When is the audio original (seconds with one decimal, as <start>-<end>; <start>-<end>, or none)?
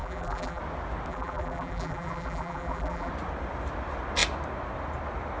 0.6-1.1; 3.1-5.4